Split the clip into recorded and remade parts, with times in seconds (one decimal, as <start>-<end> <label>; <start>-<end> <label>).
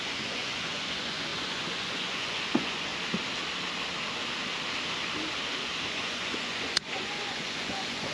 0.0-2.9 remade; 2.9-5.9 recorded; 5.9-8.1 remade